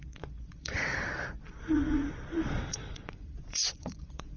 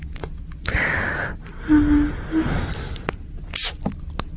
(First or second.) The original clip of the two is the second